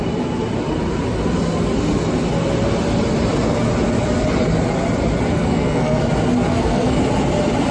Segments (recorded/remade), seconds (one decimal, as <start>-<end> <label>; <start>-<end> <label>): 0.0-5.3 recorded; 5.3-6.0 remade; 6.0-6.5 recorded; 6.5-7.0 remade; 7.0-7.7 recorded